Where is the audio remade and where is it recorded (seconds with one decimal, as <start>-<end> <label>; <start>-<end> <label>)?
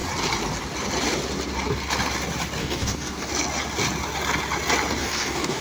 0.0-2.6 recorded; 2.6-3.3 remade; 3.3-5.0 recorded; 5.0-5.6 remade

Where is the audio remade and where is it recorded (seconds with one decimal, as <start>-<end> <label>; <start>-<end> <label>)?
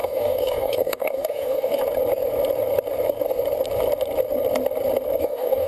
0.0-1.8 remade; 1.8-5.2 recorded; 5.2-5.7 remade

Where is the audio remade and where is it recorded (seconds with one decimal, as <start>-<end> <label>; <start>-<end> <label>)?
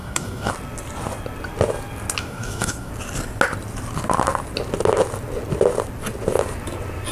0.0-0.5 remade; 0.5-2.2 recorded; 2.2-2.9 remade; 2.9-7.1 recorded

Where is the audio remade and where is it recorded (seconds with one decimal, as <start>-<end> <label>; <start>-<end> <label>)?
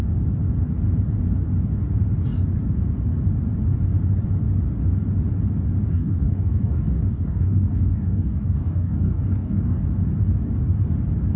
0.0-5.9 recorded; 5.9-9.8 remade; 9.8-11.4 recorded